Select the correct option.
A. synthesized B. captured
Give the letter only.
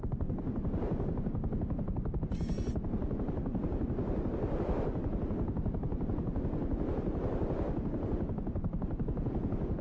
B